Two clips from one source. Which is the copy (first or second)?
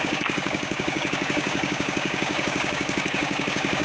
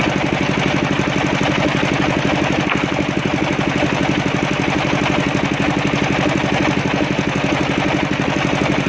first